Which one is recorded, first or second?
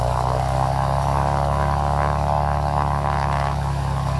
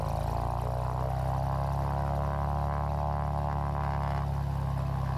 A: second